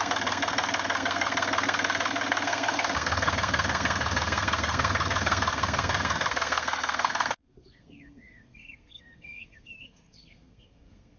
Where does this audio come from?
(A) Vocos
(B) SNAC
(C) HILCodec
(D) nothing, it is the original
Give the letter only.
B